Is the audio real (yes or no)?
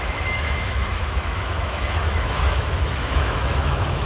no